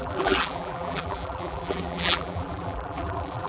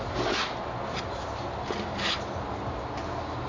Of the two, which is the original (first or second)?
second